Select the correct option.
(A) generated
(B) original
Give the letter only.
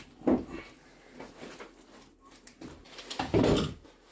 B